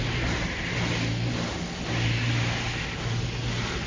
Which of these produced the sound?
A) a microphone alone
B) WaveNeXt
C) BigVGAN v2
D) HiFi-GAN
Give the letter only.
A